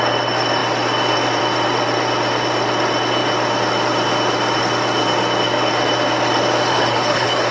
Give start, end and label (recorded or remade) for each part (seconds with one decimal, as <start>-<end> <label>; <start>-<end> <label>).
0.0-6.7 recorded; 6.7-7.5 remade